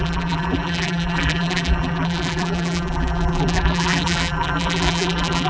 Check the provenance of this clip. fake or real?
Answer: fake